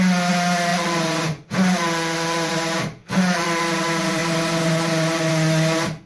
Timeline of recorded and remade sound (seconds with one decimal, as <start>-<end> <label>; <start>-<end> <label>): 0.0-0.7 recorded; 0.7-2.5 remade; 2.5-3.0 recorded; 3.0-3.6 remade; 3.6-4.2 recorded; 4.2-5.3 remade; 5.3-6.1 recorded